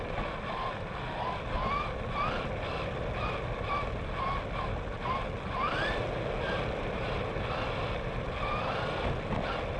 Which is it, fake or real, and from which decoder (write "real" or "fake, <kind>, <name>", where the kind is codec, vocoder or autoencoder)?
real